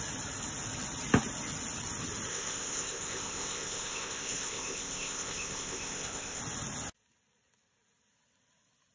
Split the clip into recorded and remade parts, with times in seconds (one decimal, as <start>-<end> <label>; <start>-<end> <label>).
0.0-2.3 recorded; 2.3-6.4 remade; 6.4-8.9 recorded